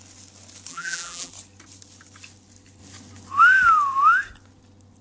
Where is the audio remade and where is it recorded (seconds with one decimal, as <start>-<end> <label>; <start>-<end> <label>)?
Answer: 0.0-0.7 recorded; 0.7-1.3 remade; 1.3-5.0 recorded